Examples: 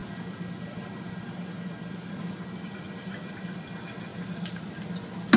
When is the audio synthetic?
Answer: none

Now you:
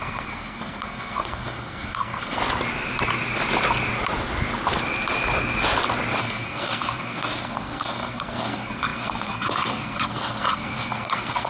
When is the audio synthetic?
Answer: 0.0-2.4 (codec, SNAC); 6.2-11.5

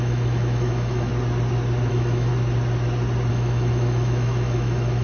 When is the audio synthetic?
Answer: 0.0-1.1 (autoencoder, DAC-VAE); 1.9-2.3; 3.3-5.0

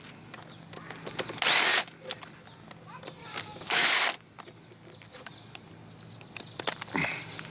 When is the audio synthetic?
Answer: 3.2-3.9 (codec, DAC)

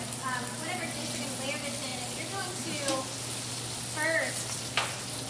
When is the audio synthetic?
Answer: none

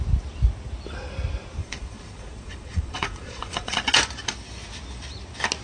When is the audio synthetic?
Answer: 1.6-3.8 (vocoder, Vocos)

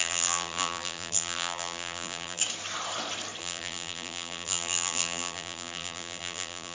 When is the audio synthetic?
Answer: 0.0-2.4 (vocoder, BigVGAN v2); 3.4-6.7